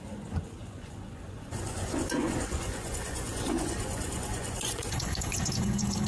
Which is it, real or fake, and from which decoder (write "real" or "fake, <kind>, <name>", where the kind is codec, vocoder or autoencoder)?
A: fake, vocoder, Vocos